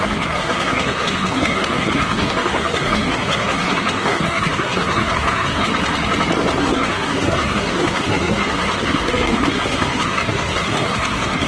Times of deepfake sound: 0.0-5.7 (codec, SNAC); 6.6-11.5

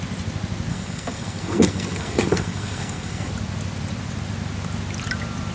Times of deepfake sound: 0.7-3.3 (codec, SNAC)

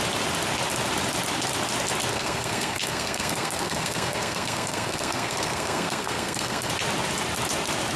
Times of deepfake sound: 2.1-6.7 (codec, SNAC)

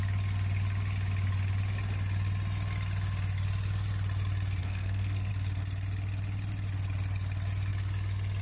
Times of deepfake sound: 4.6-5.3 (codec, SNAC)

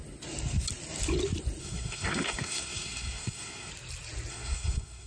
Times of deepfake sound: 1.6-3.7 (codec, SNAC); 4.3-5.1

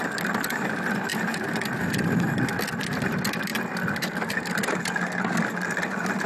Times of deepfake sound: none

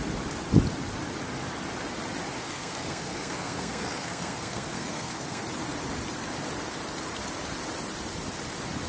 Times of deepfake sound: 2.4-5.4 (codec, SNAC)